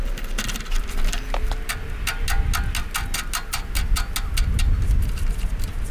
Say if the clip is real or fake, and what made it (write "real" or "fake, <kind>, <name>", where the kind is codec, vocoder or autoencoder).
real